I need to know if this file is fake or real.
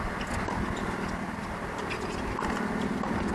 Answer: real